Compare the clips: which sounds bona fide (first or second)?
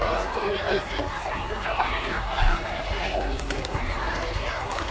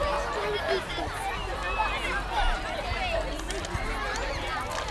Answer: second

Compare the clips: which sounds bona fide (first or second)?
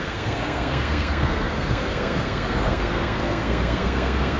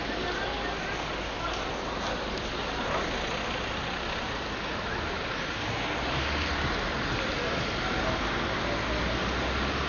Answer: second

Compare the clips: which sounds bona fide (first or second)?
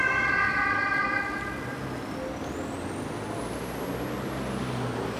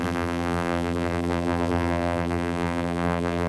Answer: first